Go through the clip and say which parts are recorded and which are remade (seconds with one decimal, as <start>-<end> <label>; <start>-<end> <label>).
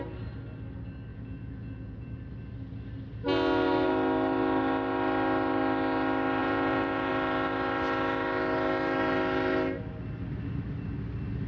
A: 0.0-1.1 recorded; 1.1-2.1 remade; 2.1-6.4 recorded; 6.4-7.1 remade; 7.1-11.5 recorded